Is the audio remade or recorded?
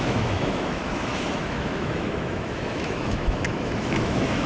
remade